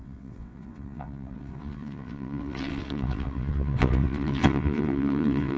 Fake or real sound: fake